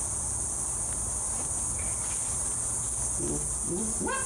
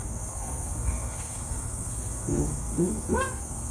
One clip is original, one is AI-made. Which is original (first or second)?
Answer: first